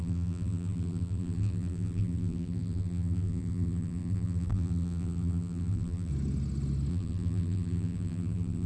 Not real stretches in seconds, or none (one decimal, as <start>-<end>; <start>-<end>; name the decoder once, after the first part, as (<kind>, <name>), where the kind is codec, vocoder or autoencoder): 0.0-6.1 (vocoder, BigVGAN v2); 6.9-8.7